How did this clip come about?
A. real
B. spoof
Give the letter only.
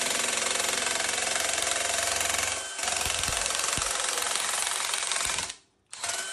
A